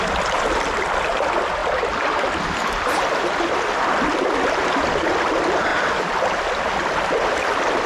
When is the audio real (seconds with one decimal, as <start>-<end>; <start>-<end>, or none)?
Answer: 0.0-7.9